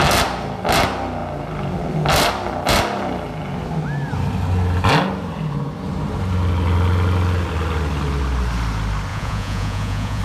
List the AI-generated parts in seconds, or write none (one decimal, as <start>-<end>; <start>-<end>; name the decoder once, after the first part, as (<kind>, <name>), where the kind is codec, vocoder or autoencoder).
9.1-10.2 (vocoder, Vocos)

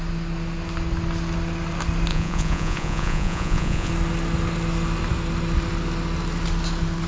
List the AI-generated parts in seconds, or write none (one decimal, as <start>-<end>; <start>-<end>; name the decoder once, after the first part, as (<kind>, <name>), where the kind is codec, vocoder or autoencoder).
2.1-3.9 (vocoder, Vocos)

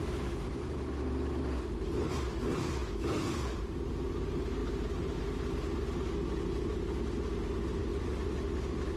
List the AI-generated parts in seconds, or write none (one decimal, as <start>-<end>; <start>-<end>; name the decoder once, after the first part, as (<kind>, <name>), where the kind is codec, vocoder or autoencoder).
none

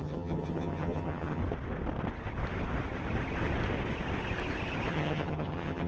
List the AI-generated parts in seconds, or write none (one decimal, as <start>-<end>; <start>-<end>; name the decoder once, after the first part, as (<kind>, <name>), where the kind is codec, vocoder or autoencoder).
0.0-1.4 (vocoder, HiFi-GAN); 4.9-5.9